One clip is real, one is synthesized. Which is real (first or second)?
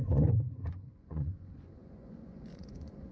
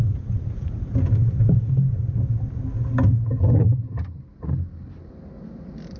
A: second